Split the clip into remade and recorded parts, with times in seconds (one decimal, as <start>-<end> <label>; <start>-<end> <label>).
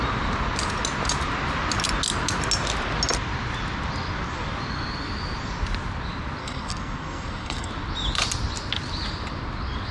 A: 0.0-6.4 recorded; 6.4-7.7 remade; 7.7-9.9 recorded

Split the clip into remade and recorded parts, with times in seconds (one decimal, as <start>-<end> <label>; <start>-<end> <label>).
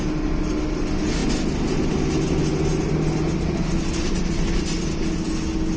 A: 0.0-5.8 recorded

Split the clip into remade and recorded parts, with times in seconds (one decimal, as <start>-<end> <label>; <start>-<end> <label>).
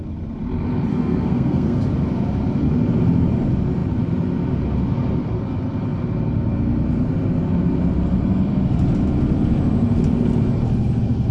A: 0.0-0.9 recorded; 0.9-1.8 remade; 1.8-11.3 recorded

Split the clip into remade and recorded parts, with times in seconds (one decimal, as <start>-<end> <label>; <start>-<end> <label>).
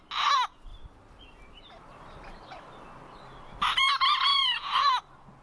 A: 0.0-0.7 recorded; 0.7-3.9 remade; 3.9-4.3 recorded; 4.3-5.0 remade; 5.0-5.4 recorded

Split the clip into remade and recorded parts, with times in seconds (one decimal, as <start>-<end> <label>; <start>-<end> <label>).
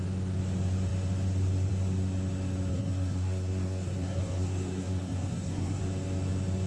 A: 0.0-2.7 recorded; 2.7-5.8 remade; 5.8-6.7 recorded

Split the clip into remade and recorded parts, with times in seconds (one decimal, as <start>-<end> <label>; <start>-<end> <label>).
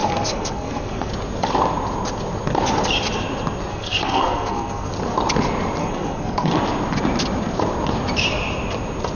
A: 0.0-1.1 remade; 1.1-3.7 recorded; 3.7-4.9 remade; 4.9-5.8 recorded; 5.8-6.5 remade; 6.5-9.1 recorded